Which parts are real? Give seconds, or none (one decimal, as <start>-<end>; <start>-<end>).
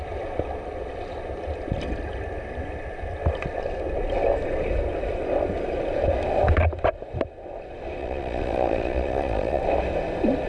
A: 0.0-8.0; 9.6-10.5